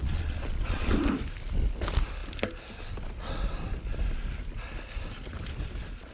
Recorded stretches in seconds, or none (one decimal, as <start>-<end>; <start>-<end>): 0.9-6.1

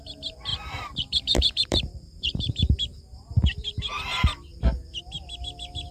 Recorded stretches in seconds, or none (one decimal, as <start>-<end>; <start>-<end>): 0.0-0.5; 4.0-5.9

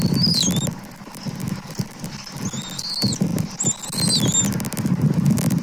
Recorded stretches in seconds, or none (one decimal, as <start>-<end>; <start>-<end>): 0.0-5.6

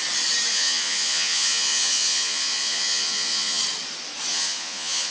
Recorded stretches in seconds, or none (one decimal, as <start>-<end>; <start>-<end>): 0.0-0.5; 3.6-4.3